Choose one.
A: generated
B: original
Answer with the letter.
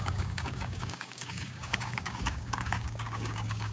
A